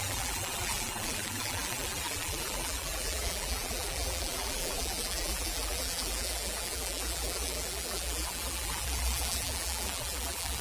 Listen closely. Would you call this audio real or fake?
fake